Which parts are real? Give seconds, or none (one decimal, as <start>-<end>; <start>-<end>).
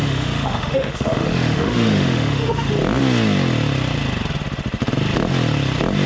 2.7-6.1